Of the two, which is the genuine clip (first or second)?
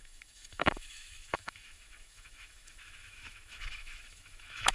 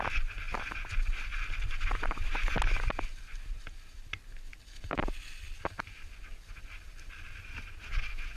second